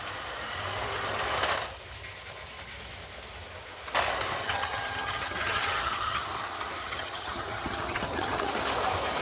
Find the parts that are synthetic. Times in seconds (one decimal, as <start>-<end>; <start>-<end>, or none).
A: 4.4-6.2; 6.8-8.5

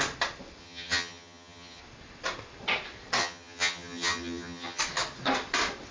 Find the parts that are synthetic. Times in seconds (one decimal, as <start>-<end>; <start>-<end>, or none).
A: 0.6-1.8; 3.2-4.8

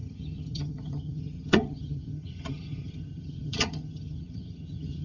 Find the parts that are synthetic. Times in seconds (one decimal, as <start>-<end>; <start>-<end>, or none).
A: 0.0-5.0

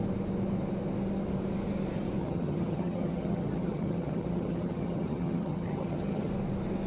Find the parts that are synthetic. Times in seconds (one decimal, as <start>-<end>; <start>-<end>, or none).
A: 2.2-6.3